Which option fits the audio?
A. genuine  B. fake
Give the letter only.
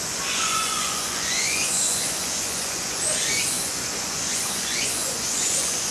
B